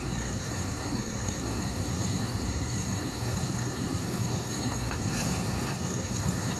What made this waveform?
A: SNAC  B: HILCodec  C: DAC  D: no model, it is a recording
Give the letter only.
A